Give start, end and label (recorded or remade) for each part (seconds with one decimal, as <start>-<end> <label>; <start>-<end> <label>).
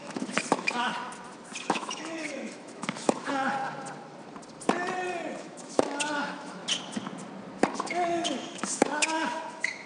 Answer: 0.0-0.9 remade; 0.9-1.6 recorded; 1.6-3.3 remade; 3.3-5.4 recorded; 5.4-6.6 remade; 6.6-7.7 recorded; 7.7-9.9 remade